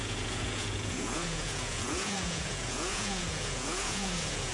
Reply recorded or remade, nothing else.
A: remade